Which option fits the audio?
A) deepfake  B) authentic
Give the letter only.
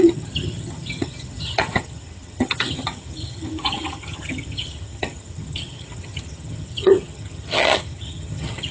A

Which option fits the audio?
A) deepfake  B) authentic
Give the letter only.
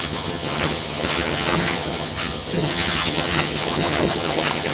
A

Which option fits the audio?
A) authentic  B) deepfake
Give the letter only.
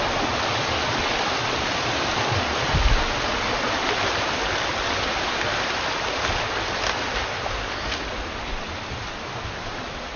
A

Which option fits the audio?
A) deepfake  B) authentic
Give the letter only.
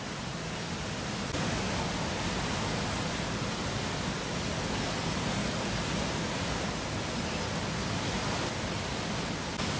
B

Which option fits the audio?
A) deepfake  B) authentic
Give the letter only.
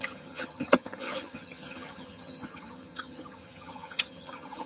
A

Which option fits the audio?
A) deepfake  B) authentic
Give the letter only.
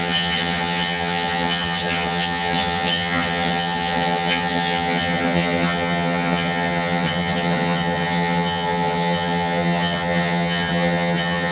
A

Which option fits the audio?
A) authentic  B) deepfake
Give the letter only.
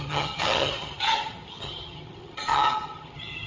B